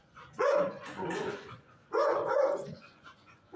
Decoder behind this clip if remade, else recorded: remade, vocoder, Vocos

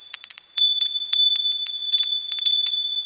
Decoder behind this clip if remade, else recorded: remade, vocoder, Vocos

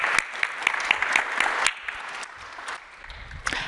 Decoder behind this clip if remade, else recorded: recorded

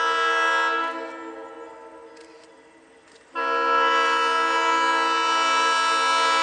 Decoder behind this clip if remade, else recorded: recorded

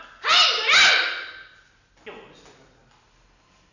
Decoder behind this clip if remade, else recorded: recorded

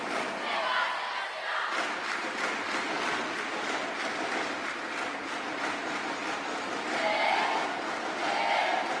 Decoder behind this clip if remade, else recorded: recorded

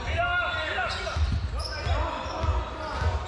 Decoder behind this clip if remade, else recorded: recorded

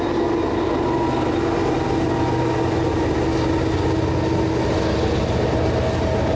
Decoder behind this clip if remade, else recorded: recorded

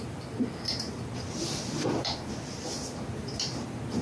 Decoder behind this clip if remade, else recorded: remade, vocoder, BigVGAN v2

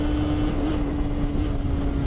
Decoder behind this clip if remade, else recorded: recorded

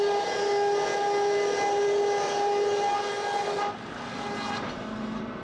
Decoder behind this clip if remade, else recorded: recorded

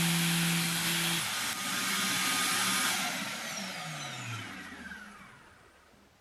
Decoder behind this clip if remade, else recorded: recorded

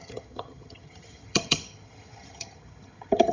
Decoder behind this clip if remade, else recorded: remade, vocoder, HiFi-GAN